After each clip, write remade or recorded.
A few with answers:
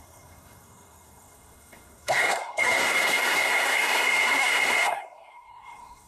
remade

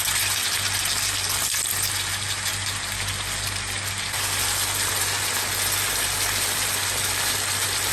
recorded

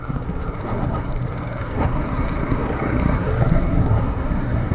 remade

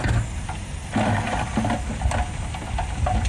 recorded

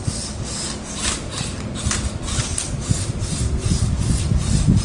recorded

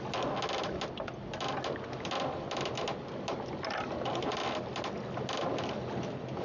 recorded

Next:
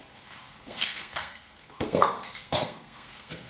remade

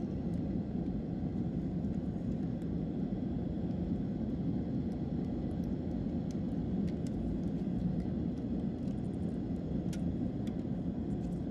recorded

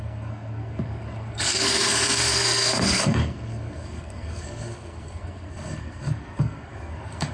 remade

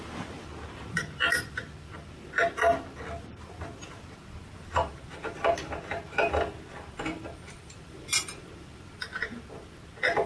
recorded